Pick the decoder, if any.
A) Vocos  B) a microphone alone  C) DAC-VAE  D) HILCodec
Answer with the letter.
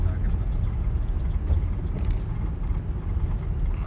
B